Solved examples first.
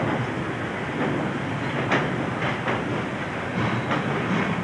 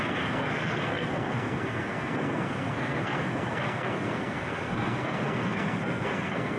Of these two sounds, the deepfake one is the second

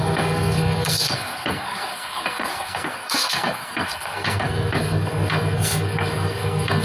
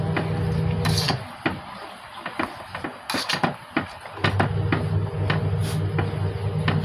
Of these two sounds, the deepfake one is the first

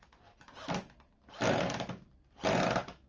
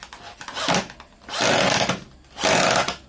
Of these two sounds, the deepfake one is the first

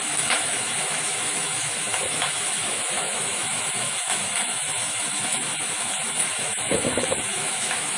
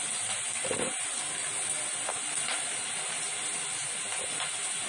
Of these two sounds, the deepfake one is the first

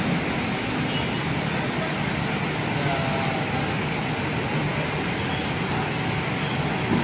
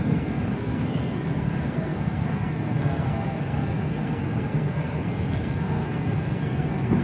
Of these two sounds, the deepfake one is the second